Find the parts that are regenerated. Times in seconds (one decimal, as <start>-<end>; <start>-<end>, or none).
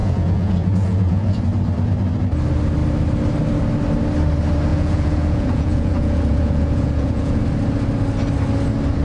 0.0-1.4; 4.7-7.4